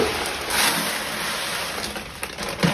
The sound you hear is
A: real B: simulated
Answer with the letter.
A